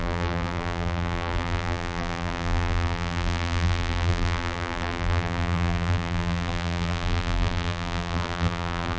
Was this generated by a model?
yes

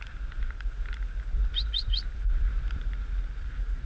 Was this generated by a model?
no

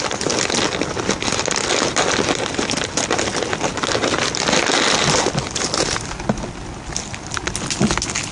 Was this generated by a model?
no